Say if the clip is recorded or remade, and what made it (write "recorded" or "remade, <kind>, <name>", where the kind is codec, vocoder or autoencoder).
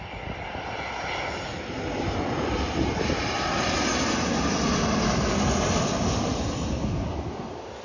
recorded